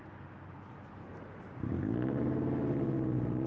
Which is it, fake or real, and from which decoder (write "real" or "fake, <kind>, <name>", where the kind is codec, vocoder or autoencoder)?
real